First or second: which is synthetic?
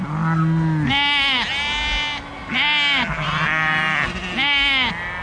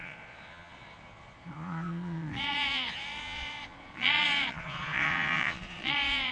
second